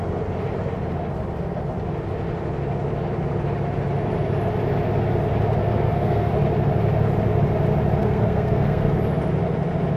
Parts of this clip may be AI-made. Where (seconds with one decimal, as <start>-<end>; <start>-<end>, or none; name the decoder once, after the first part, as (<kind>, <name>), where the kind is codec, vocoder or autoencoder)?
5.6-6.3 (codec, SNAC); 8.0-9.0